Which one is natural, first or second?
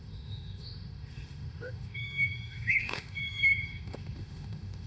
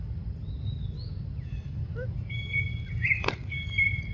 second